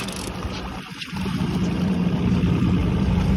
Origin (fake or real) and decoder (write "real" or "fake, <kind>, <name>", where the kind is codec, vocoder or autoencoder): real